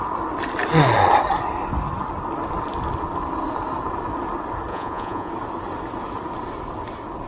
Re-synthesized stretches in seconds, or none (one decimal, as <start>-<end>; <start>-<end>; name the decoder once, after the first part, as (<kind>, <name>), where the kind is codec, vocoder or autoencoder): 4.7-5.3 (vocoder, Vocos)